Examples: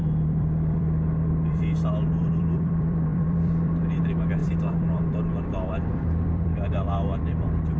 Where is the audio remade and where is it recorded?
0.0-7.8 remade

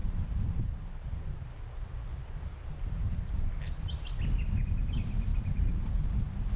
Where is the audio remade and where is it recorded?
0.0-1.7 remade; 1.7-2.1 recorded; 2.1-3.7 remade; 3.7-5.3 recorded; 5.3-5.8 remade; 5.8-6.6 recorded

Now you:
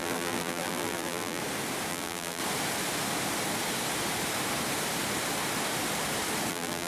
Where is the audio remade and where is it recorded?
0.0-1.4 remade; 1.4-1.9 recorded; 1.9-2.4 remade; 2.4-6.5 recorded; 6.5-6.9 remade

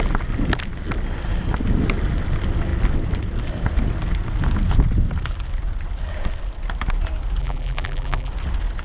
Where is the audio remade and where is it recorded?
0.0-7.4 recorded; 7.4-8.3 remade; 8.3-8.8 recorded